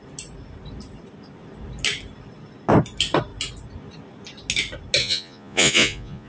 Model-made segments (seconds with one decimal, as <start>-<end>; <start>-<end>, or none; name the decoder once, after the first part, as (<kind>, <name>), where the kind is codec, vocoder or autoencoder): 5.0-6.3 (vocoder, Vocos)

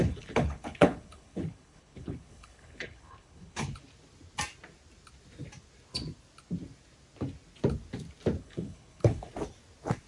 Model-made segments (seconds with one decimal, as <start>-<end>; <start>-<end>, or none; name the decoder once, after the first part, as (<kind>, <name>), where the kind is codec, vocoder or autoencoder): 0.0-3.7 (codec, HILCodec); 8.4-9.3

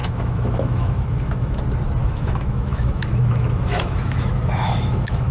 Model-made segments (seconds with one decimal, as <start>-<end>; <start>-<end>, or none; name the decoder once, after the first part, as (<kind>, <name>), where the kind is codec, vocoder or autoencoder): 0.0-1.6 (autoencoder, DAC-VAE); 2.0-5.3

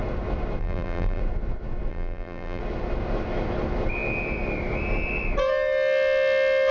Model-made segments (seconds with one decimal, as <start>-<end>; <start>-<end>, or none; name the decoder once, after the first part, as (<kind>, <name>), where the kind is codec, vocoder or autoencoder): 0.6-1.2 (vocoder, BigVGAN v2); 1.9-2.6